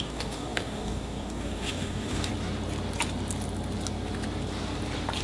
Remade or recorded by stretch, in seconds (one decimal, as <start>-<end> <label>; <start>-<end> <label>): 0.0-2.3 remade; 2.3-5.2 recorded